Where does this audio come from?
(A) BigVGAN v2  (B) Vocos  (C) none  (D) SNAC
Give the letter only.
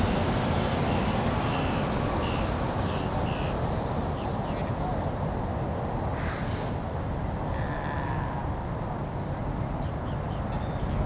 C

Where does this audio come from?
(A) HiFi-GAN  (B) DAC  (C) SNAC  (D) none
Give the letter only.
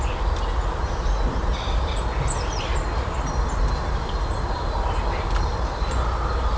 D